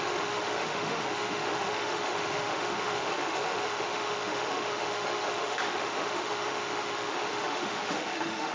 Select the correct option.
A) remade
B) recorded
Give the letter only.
A